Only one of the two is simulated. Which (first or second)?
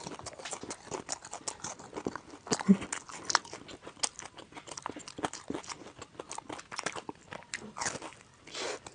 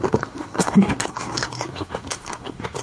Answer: second